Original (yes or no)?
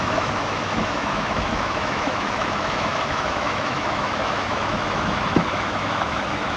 no